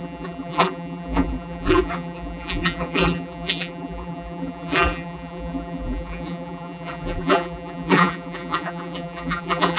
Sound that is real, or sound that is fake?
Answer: fake